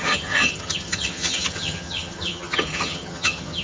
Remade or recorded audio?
remade